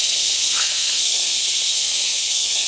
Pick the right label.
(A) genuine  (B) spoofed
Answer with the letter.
B